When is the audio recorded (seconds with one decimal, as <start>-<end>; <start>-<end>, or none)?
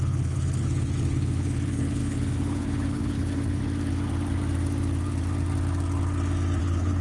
3.6-6.6